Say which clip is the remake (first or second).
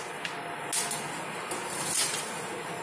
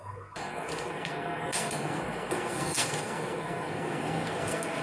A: second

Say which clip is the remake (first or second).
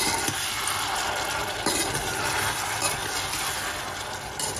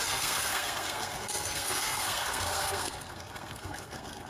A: second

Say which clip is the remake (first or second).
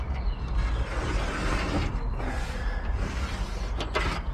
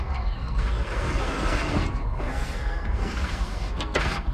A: second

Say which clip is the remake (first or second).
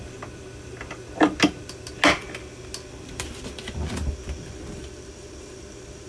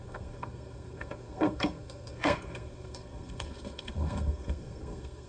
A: second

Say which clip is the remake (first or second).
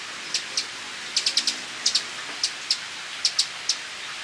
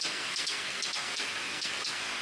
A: second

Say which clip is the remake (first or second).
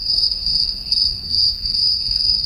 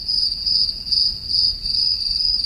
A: first